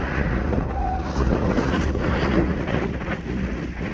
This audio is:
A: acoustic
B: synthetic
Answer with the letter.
B